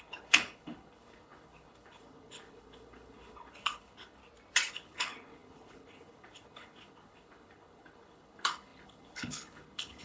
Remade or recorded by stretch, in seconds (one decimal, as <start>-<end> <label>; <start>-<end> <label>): 0.0-4.2 remade; 4.2-4.7 recorded; 4.7-10.0 remade